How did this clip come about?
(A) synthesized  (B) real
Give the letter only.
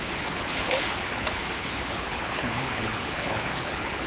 A